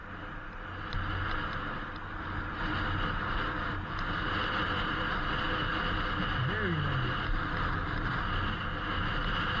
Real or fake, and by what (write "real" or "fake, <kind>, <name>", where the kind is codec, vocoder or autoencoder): real